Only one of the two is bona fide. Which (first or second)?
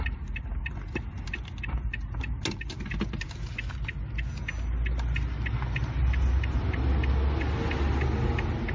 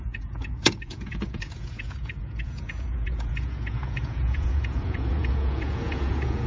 first